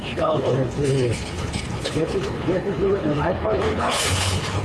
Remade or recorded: remade